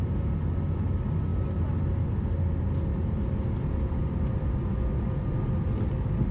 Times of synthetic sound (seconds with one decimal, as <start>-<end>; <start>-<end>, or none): none